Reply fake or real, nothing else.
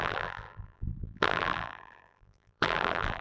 fake